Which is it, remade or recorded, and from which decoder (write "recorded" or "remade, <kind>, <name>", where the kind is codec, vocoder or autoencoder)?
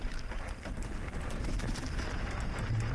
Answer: recorded